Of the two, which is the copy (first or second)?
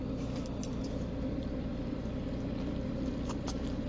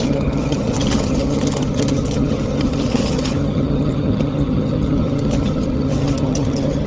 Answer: second